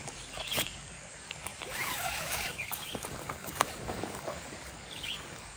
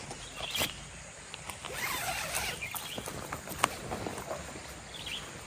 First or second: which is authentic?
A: second